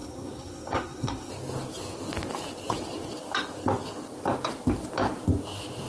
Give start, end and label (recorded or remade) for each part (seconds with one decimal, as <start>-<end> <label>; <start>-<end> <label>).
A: 0.0-1.3 remade; 1.3-5.9 recorded